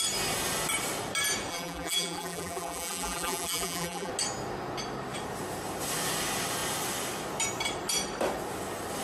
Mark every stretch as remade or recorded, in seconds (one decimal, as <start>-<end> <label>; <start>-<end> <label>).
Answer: 0.0-1.5 recorded; 1.5-4.1 remade; 4.1-9.0 recorded